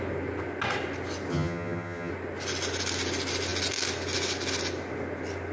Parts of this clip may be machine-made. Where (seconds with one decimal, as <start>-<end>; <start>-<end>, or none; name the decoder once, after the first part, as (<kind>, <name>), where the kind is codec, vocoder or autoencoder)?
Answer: 1.3-2.1 (vocoder, HiFi-GAN)